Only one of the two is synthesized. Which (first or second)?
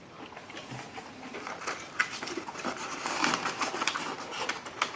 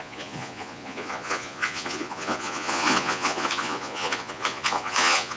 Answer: second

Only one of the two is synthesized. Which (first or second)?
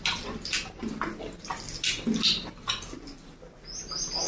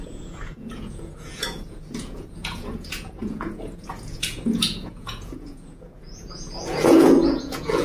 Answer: second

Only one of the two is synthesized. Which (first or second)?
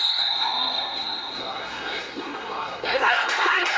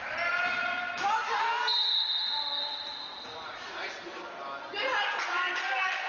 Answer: first